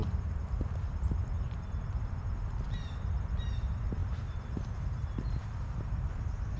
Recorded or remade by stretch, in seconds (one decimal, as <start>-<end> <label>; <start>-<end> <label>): 0.0-6.6 remade